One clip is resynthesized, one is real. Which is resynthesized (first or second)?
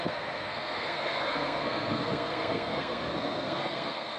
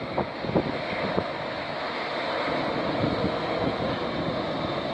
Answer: first